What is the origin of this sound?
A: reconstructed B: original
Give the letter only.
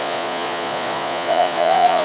A